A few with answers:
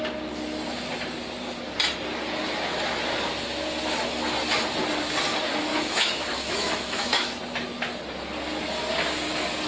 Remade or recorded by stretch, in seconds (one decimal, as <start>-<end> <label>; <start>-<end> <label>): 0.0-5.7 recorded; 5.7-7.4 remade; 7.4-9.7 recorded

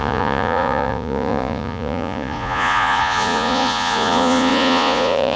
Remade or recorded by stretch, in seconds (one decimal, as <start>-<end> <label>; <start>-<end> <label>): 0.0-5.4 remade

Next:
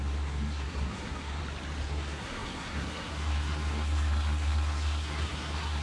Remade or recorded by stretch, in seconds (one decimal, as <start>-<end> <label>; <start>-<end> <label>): 0.0-1.4 remade; 1.4-1.9 recorded; 1.9-5.8 remade

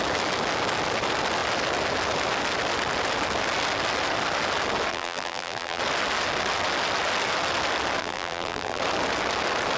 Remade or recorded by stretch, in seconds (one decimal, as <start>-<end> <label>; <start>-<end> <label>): 0.0-4.9 recorded; 4.9-5.8 remade; 5.8-8.0 recorded; 8.0-8.8 remade; 8.8-9.8 recorded

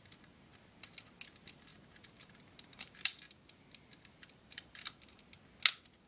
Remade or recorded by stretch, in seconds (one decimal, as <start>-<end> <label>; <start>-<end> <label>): 0.0-1.7 recorded; 1.7-4.9 remade; 4.9-6.1 recorded

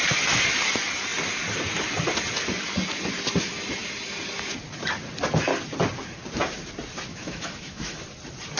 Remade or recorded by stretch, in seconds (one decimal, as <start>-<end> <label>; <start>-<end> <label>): 0.0-7.1 recorded; 7.1-8.0 remade; 8.0-8.6 recorded